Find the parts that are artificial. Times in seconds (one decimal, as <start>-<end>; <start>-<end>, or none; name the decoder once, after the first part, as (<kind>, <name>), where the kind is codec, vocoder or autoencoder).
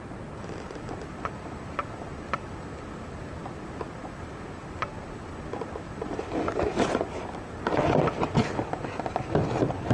0.0-9.9 (vocoder, BigVGAN v2)